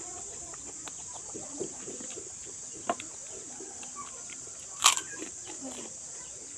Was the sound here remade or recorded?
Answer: recorded